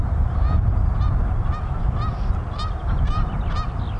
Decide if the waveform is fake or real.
real